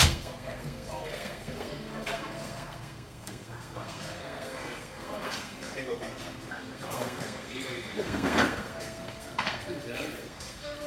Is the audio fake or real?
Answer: fake